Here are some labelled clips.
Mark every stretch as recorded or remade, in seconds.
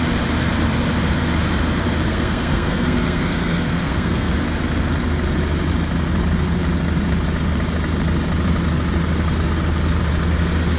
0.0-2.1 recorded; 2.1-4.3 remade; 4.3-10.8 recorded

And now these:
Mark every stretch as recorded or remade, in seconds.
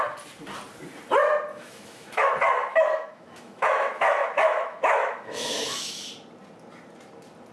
0.0-1.5 recorded; 1.5-2.3 remade; 2.3-2.7 recorded; 2.7-6.1 remade; 6.1-7.5 recorded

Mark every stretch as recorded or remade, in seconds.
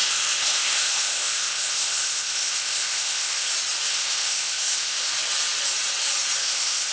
0.0-3.5 remade; 3.5-3.9 recorded; 3.9-5.1 remade; 5.1-6.4 recorded; 6.4-6.9 remade